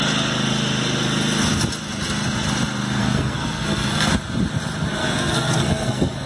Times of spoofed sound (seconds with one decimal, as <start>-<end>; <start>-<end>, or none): 3.0-4.1; 5.0-6.3